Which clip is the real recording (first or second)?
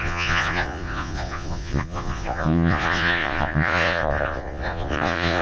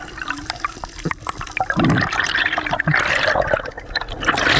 second